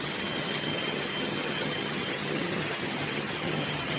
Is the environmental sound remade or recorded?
remade